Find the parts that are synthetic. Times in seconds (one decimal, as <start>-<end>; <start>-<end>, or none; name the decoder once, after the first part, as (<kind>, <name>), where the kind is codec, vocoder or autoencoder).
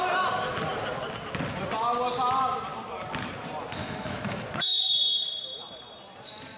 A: 3.8-4.8 (autoencoder, DAC-VAE)